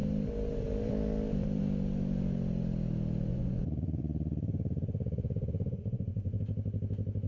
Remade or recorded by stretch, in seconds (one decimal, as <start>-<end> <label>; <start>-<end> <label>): 0.0-3.3 recorded; 3.3-6.4 remade; 6.4-7.3 recorded